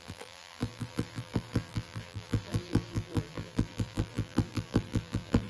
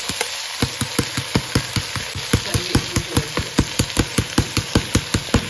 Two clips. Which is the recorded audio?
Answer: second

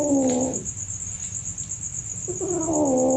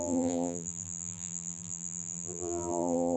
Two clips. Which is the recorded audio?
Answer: first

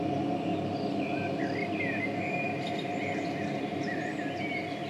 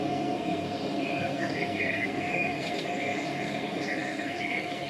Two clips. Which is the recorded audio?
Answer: first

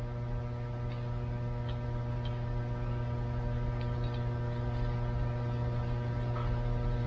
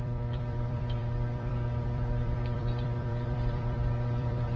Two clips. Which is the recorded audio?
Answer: first